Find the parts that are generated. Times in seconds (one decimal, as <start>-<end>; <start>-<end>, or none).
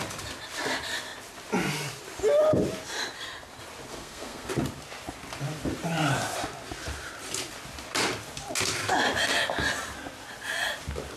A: 3.9-4.5